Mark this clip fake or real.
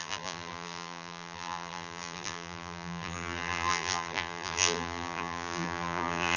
fake